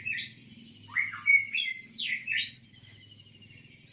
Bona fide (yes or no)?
yes